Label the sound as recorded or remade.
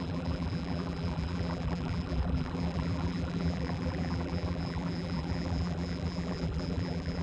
remade